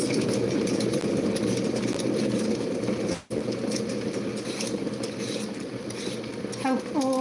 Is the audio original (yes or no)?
yes